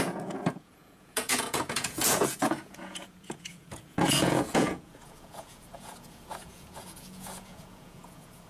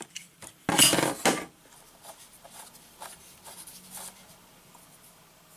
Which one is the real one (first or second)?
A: second